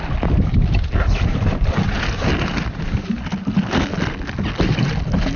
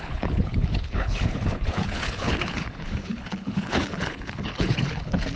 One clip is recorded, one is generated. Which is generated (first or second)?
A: second